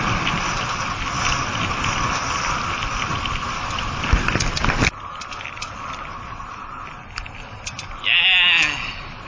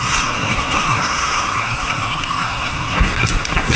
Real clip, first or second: first